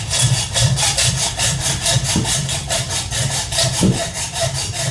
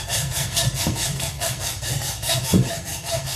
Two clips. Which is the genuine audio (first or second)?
first